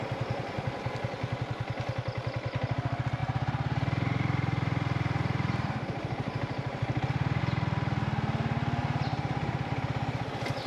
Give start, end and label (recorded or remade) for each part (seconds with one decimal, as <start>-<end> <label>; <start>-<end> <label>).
0.0-0.6 remade; 0.6-3.2 recorded; 3.2-7.4 remade; 7.4-8.8 recorded; 8.8-9.7 remade; 9.7-10.7 recorded